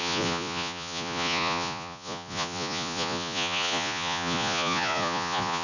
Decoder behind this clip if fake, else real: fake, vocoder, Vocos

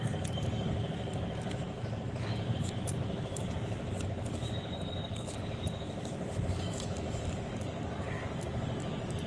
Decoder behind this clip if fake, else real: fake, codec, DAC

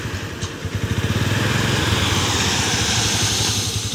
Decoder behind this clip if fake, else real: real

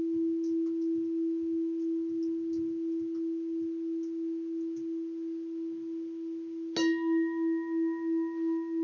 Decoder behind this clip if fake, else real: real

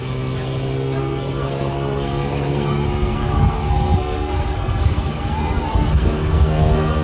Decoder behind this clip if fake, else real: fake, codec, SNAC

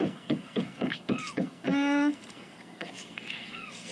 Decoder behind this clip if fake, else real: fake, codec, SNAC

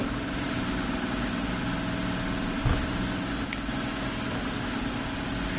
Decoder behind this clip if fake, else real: real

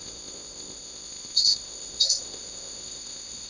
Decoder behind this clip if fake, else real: fake, codec, ZipCodec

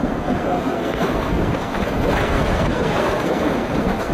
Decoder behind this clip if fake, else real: fake, codec, SNAC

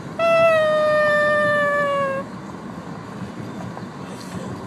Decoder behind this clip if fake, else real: real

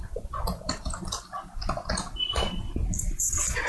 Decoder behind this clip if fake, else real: fake, vocoder, BigVGAN v2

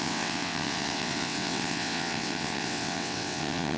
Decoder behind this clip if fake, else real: fake, vocoder, WaveNeXt